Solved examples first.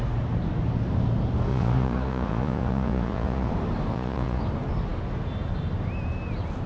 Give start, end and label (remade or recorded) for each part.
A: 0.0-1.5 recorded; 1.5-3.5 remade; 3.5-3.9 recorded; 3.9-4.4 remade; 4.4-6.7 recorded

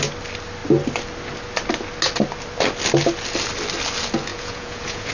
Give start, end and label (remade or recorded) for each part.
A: 0.0-4.3 recorded; 4.3-5.1 remade

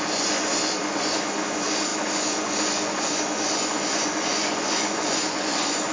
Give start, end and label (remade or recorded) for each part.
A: 0.0-5.9 remade

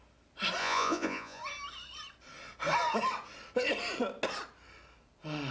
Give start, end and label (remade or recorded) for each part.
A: 0.0-0.6 recorded; 0.6-1.4 remade; 1.4-5.5 recorded

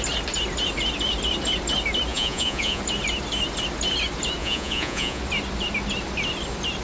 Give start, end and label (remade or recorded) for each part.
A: 0.0-2.1 recorded; 2.1-2.8 remade; 2.8-4.4 recorded; 4.4-5.2 remade; 5.2-6.8 recorded

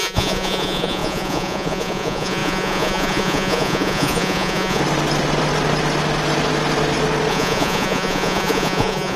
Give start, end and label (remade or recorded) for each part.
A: 0.0-4.8 remade; 4.8-7.3 recorded; 7.3-9.2 remade

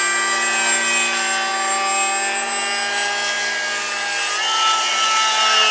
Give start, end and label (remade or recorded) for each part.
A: 0.0-5.7 recorded